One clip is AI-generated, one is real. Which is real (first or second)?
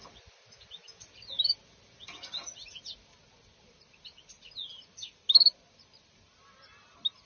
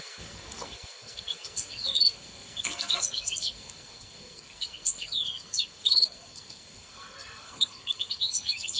first